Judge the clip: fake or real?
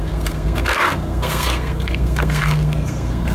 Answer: fake